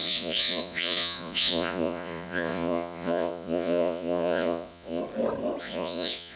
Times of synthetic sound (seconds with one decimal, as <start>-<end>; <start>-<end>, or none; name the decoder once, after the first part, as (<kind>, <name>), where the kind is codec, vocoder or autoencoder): 0.0-5.0 (vocoder, Vocos); 5.6-6.4